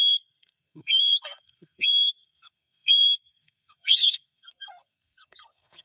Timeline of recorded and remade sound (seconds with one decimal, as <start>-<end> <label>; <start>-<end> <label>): 0.0-5.8 remade